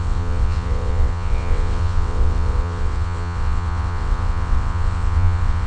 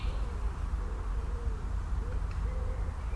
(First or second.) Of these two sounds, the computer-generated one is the first